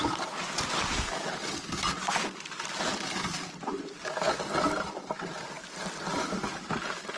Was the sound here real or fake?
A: fake